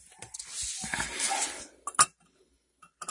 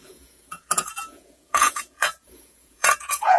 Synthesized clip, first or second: second